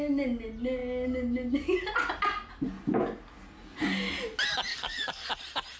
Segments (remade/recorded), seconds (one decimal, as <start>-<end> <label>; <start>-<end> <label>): 0.0-4.7 recorded; 4.7-5.3 remade; 5.3-5.8 recorded